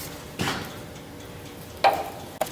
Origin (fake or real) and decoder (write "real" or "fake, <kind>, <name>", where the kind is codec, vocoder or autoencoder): real